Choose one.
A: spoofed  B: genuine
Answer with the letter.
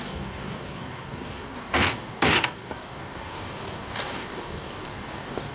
A